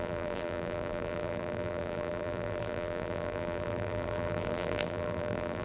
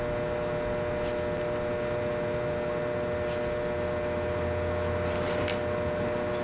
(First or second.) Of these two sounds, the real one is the second